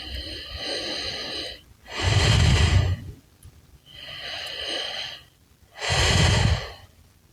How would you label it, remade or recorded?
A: recorded